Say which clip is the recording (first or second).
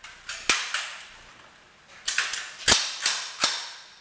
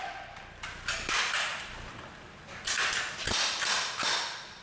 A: first